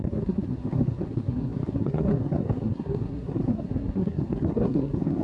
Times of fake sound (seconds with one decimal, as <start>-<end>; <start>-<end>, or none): 0.0-5.2